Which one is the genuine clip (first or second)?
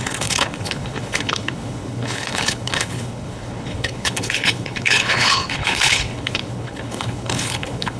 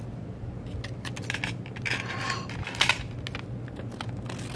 second